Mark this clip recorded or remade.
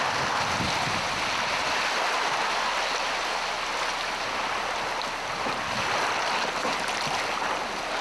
recorded